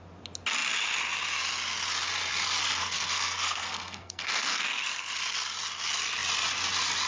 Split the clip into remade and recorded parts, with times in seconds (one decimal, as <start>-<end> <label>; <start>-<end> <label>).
0.0-2.8 recorded; 2.8-5.1 remade; 5.1-7.1 recorded